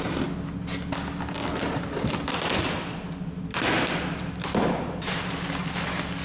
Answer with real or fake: real